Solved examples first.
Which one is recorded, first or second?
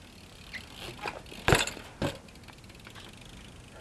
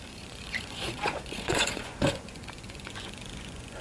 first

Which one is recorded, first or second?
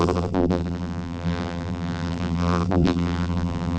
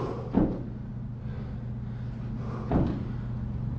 second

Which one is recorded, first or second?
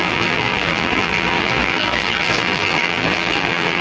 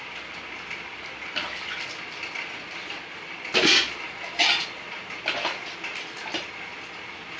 second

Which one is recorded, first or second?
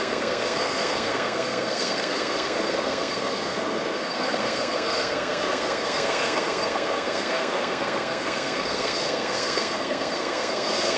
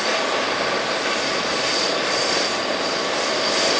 second